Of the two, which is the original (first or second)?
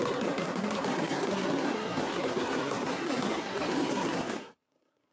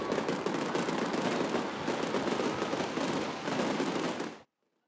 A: second